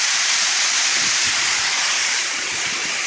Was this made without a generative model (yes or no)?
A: yes